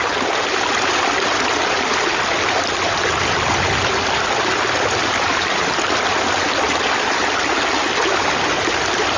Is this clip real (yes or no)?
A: yes